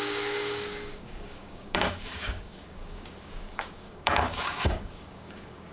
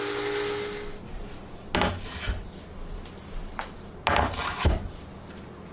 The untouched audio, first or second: second